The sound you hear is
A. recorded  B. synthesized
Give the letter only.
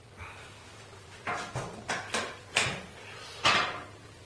A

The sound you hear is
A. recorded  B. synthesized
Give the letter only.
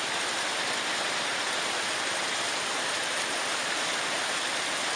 A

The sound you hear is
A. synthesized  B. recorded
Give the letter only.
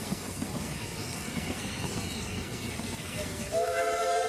A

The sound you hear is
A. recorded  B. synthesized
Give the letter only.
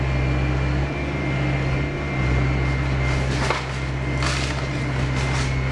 A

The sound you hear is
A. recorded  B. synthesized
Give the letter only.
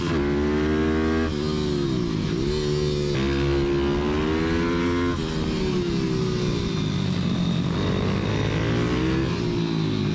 A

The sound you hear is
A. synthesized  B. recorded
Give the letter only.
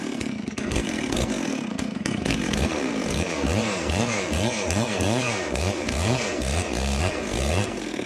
A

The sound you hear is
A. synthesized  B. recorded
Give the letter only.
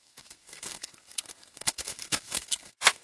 A